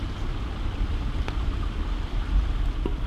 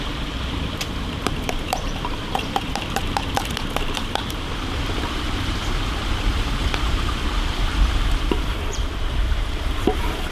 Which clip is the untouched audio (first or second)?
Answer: first